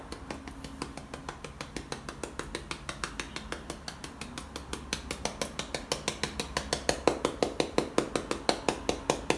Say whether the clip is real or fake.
real